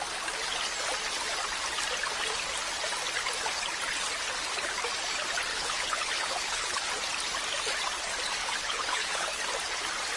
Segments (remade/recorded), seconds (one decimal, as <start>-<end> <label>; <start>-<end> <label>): 0.0-5.5 recorded; 5.5-6.9 remade; 6.9-8.4 recorded; 8.4-9.4 remade; 9.4-10.2 recorded